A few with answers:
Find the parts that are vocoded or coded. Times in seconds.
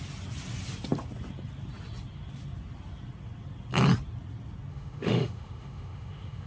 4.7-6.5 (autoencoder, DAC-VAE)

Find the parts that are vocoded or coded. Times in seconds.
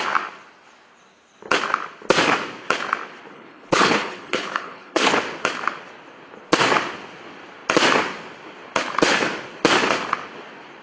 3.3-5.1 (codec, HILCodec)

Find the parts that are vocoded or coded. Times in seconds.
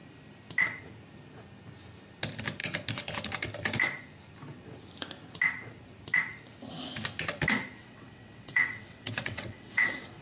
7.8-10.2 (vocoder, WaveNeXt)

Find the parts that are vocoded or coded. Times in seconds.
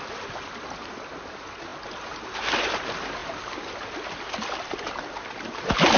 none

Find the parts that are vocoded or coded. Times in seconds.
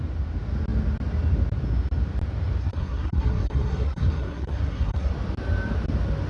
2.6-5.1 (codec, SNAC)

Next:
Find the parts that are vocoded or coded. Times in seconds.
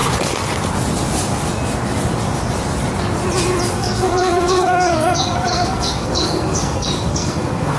3.7-7.8 (codec, SNAC)